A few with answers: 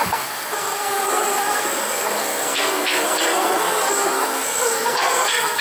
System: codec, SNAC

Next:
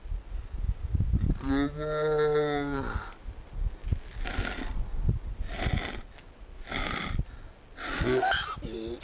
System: none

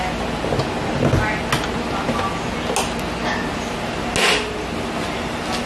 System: none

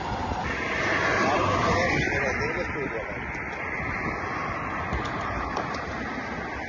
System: none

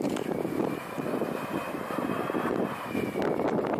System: none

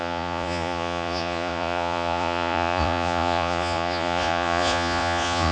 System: vocoder, Vocos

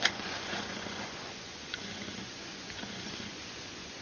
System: vocoder, Vocos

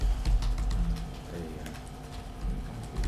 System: none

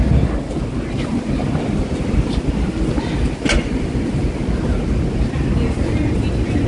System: none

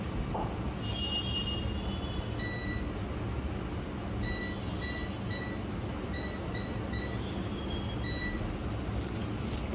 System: none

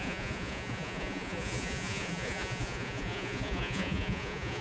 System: vocoder, Vocos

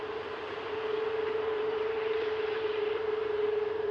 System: vocoder, BigVGAN v2